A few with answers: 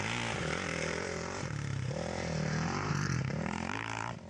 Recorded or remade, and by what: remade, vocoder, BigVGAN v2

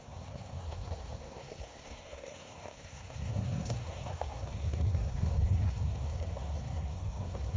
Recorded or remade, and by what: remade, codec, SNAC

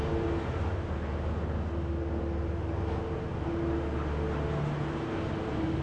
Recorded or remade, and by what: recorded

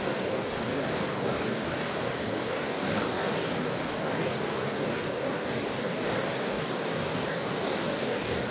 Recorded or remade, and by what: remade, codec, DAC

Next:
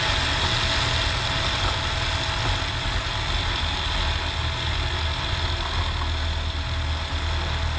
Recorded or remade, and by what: recorded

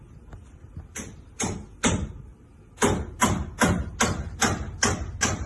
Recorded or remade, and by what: recorded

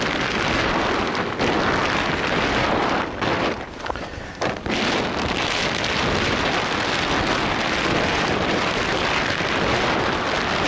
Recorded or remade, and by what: recorded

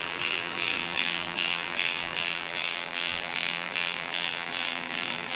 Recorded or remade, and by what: remade, vocoder, BigVGAN v2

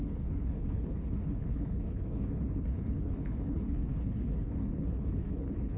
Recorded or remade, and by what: remade, codec, HILCodec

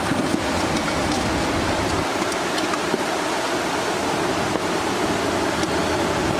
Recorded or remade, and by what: recorded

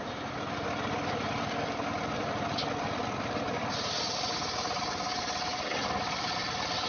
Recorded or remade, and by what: recorded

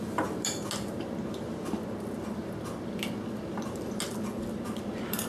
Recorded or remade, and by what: recorded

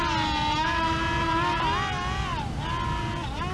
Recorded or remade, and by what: recorded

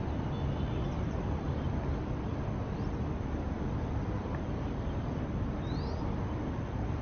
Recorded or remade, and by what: recorded